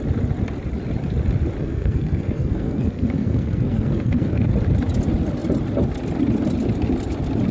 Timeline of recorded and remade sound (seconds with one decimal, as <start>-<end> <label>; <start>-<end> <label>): 0.0-1.6 recorded; 1.6-4.5 remade; 4.5-7.5 recorded

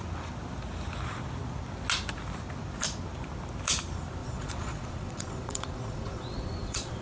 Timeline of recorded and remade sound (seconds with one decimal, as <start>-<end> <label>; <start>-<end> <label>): 0.0-4.2 recorded; 4.2-7.0 remade

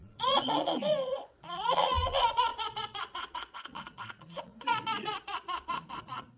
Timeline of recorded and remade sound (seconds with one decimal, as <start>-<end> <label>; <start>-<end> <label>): 0.0-6.4 remade

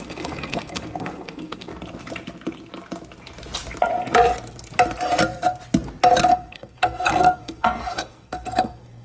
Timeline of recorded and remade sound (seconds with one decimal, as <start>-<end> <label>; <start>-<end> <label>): 0.0-1.7 remade; 1.7-6.3 recorded; 6.3-9.0 remade

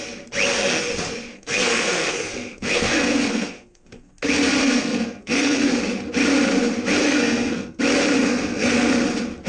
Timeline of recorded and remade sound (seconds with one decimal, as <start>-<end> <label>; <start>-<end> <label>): 0.0-1.3 recorded; 1.3-4.1 remade; 4.1-4.6 recorded; 4.6-5.8 remade; 5.8-7.0 recorded; 7.0-7.8 remade; 7.8-8.2 recorded; 8.2-8.9 remade; 8.9-9.5 recorded